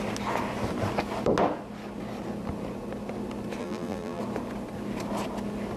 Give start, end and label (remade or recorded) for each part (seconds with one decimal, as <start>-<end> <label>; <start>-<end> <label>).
0.0-3.6 recorded; 3.6-4.2 remade; 4.2-5.8 recorded